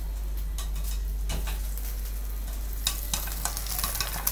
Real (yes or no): yes